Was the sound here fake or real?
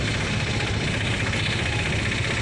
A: real